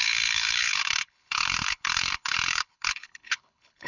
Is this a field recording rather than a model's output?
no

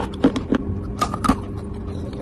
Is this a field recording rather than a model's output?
yes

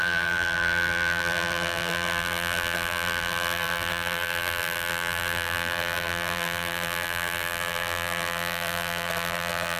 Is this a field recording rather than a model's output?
no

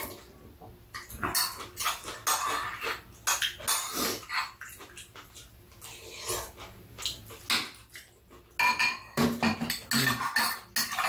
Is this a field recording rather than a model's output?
yes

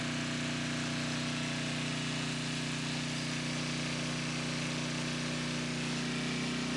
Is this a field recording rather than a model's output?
yes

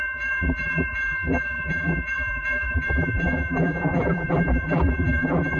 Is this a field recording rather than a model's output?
no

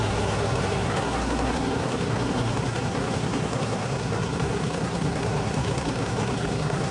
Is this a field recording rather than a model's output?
no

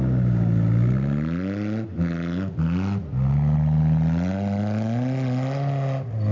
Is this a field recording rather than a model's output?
yes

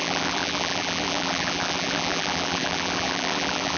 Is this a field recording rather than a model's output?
no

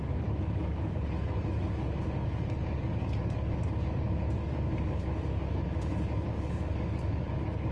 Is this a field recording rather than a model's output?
no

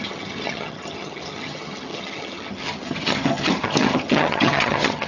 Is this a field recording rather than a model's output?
no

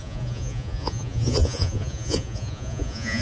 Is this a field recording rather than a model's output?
no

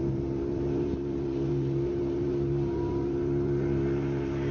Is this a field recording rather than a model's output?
no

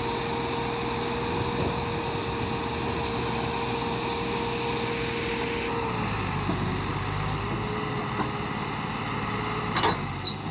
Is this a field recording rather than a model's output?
yes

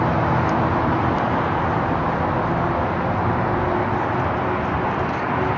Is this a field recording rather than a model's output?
yes